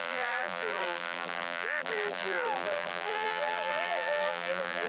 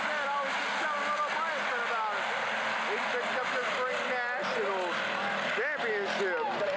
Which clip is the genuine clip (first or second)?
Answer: second